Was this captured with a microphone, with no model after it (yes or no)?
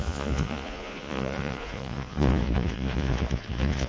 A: no